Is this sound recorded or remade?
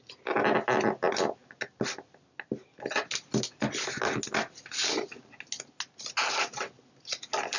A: recorded